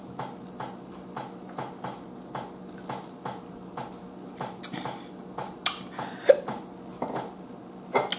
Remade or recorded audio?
recorded